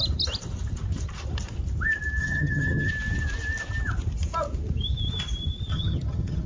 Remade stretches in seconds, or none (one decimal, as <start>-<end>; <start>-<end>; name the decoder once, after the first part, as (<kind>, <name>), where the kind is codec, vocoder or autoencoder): 2.2-2.9 (vocoder, HiFi-GAN); 5.7-6.5